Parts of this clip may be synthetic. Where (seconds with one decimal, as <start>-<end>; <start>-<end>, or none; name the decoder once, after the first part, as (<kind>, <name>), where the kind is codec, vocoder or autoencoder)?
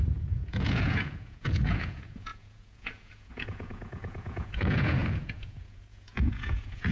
0.0-6.9 (vocoder, Vocos)